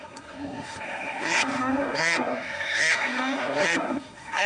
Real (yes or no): no